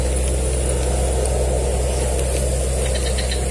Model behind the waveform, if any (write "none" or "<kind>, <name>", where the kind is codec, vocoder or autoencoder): none